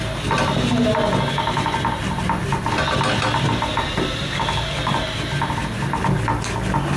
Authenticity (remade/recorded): recorded